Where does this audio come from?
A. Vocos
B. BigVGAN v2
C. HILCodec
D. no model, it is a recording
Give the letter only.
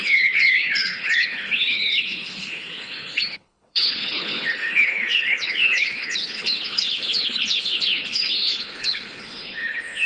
C